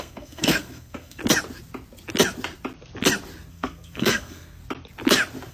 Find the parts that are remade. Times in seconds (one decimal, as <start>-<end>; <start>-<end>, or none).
0.0-1.2; 3.5-4.6